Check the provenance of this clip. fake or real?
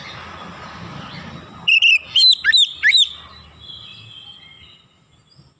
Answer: real